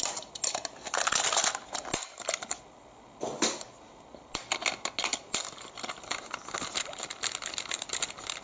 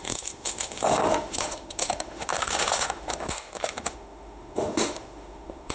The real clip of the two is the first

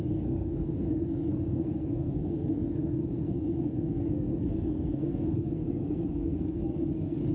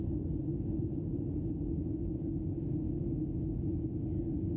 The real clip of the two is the second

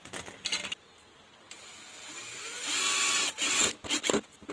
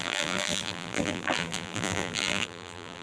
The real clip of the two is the first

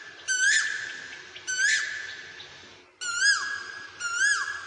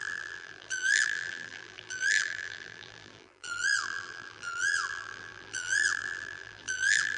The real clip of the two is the first